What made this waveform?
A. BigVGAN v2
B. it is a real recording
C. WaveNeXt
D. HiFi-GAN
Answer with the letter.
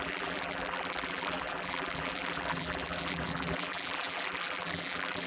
A